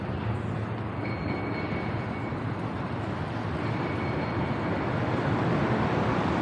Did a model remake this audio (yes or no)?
no